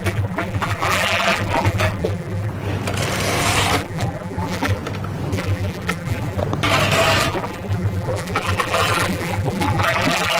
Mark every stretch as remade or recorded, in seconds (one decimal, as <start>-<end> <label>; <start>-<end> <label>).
0.0-2.5 remade; 2.5-3.8 recorded; 3.8-4.8 remade; 4.8-5.3 recorded; 5.3-6.4 remade; 6.4-7.3 recorded; 7.3-10.4 remade